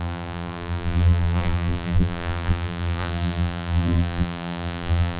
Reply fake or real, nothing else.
fake